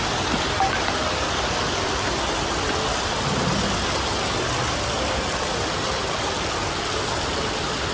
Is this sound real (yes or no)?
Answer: yes